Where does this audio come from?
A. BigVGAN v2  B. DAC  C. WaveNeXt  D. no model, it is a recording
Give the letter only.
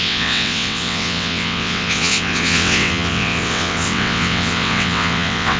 C